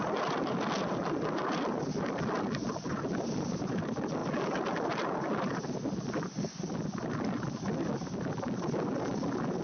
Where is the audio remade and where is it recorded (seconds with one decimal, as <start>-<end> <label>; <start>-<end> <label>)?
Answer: 0.0-9.6 recorded